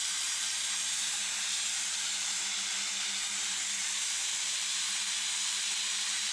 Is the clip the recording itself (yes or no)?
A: no